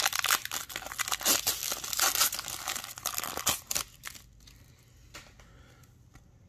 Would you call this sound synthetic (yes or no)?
no